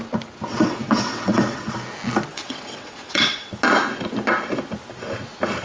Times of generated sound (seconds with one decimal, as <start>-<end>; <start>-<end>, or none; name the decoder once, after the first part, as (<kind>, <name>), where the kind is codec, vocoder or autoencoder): 0.5-1.7 (vocoder, WaveNeXt); 2.3-3.5